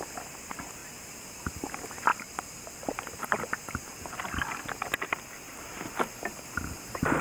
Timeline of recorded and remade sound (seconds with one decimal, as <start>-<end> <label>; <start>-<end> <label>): 0.0-7.2 recorded